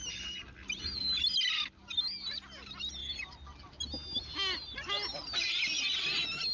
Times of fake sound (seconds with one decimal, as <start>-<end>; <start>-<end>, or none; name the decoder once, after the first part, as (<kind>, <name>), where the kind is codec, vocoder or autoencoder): none